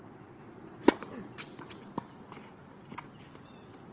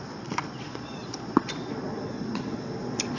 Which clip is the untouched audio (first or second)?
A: first